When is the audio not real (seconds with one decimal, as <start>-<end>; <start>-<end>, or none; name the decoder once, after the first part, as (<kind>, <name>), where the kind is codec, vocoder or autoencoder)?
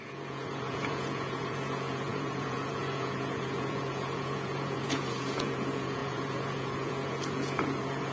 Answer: 0.0-8.1 (vocoder, Vocos)